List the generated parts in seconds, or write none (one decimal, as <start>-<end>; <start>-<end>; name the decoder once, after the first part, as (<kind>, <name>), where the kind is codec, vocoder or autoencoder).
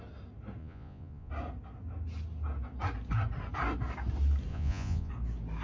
0.6-1.3 (vocoder, Vocos); 4.5-5.1